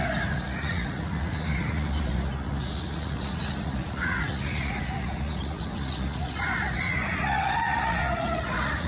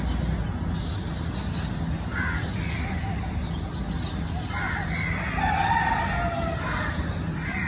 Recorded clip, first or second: second